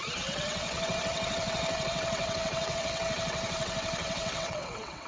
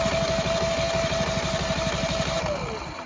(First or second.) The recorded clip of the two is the second